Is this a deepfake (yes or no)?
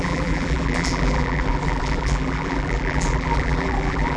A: yes